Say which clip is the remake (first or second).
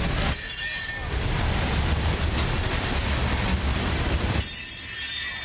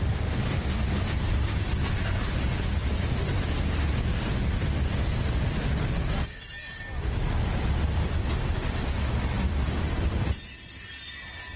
first